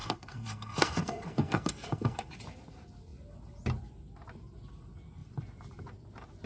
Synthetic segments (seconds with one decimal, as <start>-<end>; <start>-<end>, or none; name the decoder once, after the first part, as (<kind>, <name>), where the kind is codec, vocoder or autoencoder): 0.0-2.3 (codec, SNAC)